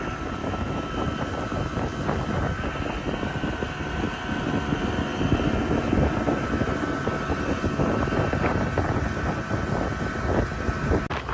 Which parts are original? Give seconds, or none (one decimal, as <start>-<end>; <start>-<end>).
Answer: 0.0-0.4; 0.9-11.3

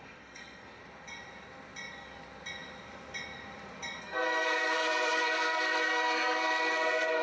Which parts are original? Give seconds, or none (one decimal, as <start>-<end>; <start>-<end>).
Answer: 0.8-4.0

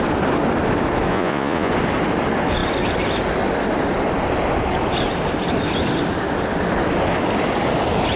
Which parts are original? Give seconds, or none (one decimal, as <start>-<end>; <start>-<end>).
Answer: 0.0-1.1; 1.7-8.2

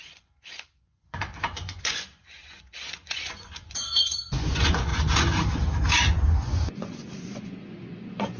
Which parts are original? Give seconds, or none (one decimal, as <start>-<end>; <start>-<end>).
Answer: 4.9-6.1

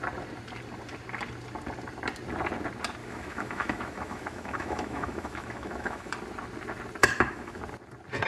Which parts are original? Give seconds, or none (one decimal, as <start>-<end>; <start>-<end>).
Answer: 0.0-3.0; 6.1-7.0; 7.6-8.3

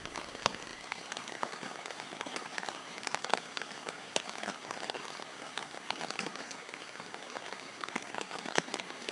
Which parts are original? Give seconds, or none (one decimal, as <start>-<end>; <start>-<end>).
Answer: none

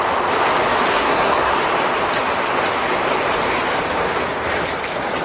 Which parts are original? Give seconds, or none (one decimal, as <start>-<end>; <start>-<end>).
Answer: 0.0-0.9; 1.5-5.2

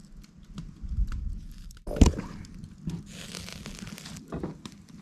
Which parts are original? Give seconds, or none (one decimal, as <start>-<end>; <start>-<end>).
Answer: 0.0-3.5